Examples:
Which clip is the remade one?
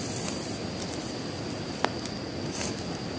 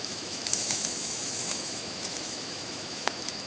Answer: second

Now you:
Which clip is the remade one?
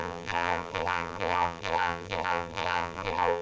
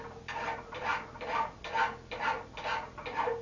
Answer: first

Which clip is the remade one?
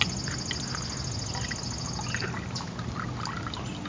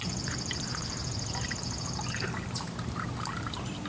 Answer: second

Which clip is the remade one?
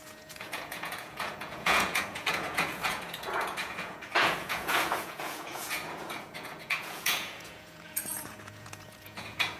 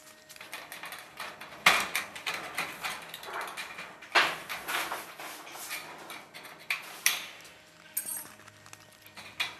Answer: first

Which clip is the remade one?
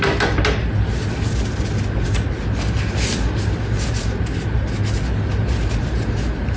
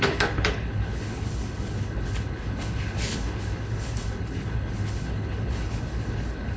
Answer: second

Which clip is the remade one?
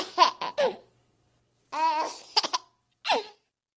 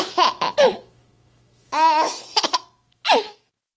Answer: second